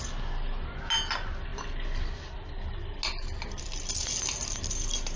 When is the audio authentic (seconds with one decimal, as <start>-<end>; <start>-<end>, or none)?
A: 0.0-5.2